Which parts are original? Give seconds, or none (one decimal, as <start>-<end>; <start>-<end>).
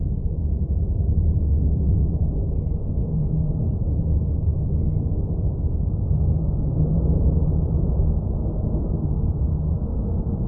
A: 8.0-8.6